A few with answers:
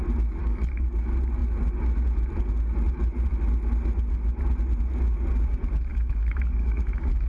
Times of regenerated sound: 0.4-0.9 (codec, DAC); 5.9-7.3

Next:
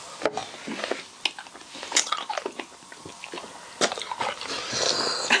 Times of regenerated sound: none

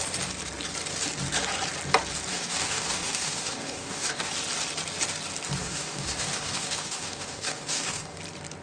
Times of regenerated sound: 2.3-4.3 (codec, DAC); 5.6-8.2

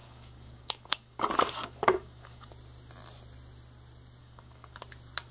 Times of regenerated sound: 0.0-2.5 (codec, DAC); 4.2-4.8